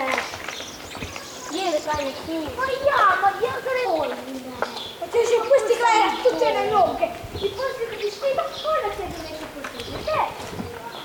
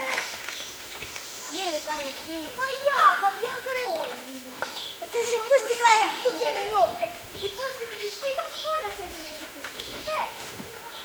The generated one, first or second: second